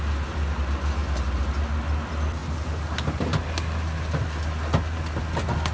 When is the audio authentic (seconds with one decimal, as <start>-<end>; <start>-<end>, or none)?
0.0-5.7